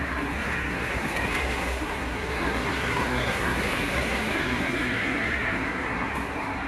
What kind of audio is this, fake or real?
fake